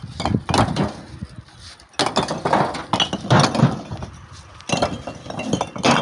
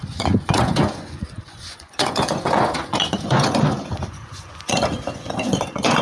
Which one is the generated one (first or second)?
second